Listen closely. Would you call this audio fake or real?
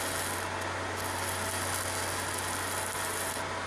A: real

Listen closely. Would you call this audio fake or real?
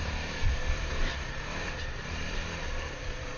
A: fake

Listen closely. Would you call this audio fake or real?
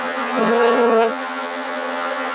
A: fake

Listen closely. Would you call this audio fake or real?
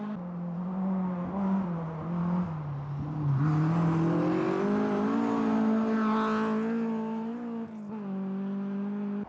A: real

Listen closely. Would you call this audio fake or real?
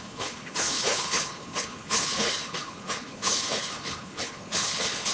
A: fake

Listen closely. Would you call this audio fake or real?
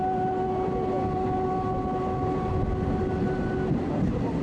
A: real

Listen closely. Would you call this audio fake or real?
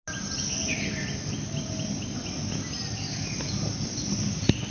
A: real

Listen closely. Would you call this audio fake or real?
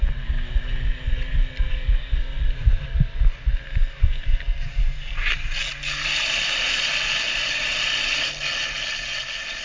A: real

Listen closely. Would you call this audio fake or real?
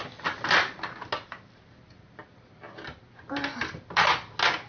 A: real